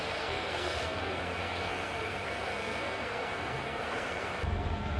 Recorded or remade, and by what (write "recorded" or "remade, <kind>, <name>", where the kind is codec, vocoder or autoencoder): remade, codec, SNAC